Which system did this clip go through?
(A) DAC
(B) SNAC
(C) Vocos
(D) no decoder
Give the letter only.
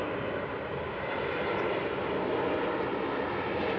D